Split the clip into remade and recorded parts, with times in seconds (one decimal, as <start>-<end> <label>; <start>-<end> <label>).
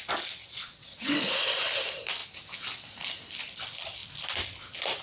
0.0-0.4 recorded; 0.4-1.2 remade; 1.2-5.0 recorded